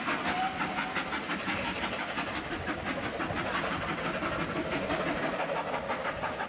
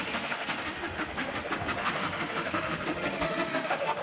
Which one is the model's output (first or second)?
second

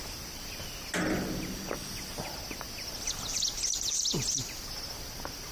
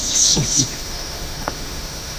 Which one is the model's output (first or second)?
second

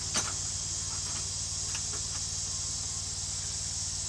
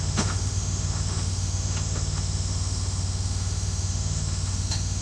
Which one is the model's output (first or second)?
second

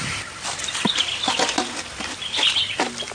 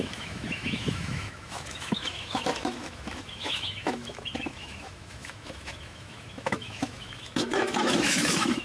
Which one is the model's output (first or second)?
second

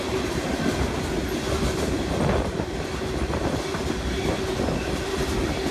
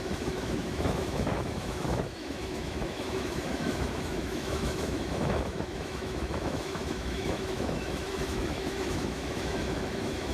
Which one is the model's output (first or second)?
second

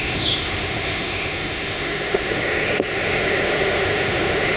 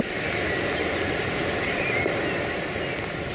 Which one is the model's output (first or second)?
first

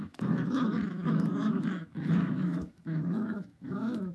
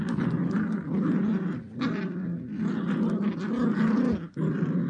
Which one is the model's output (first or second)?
first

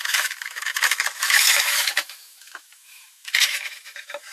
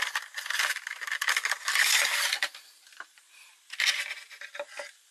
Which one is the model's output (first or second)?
first